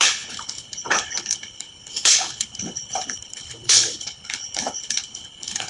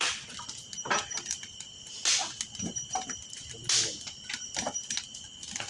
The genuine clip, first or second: second